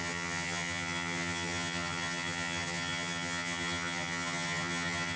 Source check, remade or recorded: remade